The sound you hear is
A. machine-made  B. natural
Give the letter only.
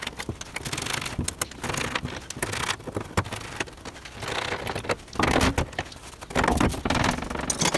B